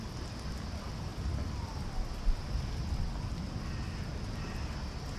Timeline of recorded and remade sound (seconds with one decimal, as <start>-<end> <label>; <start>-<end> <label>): 0.0-5.2 recorded